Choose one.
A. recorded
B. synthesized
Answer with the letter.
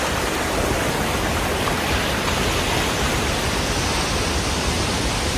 A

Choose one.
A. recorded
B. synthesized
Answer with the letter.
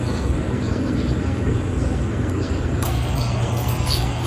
B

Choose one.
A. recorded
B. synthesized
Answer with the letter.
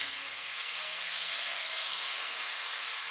B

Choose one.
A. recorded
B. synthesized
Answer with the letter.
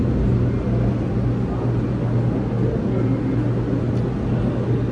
A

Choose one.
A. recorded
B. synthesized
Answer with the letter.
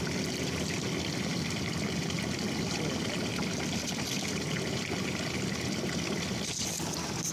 A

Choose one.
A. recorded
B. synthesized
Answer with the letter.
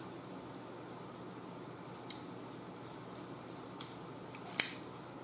A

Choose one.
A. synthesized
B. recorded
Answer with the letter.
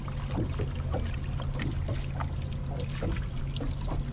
B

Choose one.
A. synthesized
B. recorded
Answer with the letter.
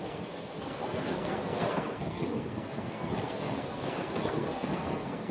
A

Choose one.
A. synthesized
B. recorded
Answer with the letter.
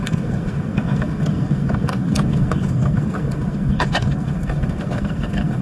A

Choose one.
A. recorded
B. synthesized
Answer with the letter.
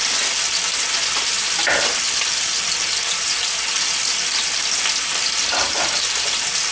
A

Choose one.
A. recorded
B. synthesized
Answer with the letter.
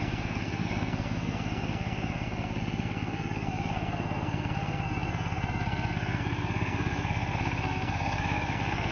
B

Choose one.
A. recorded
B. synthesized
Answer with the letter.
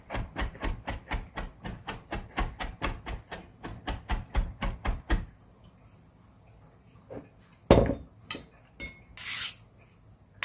A